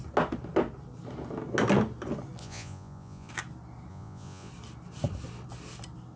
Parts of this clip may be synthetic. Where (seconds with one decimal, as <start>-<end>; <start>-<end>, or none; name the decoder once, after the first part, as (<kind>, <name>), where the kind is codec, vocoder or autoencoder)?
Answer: 2.4-3.3 (vocoder, Vocos); 3.9-4.5